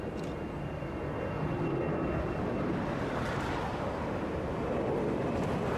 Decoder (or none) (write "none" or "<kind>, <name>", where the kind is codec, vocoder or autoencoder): none